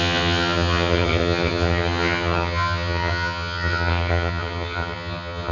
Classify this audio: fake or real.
fake